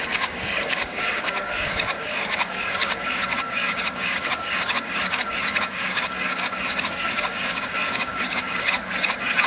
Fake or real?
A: fake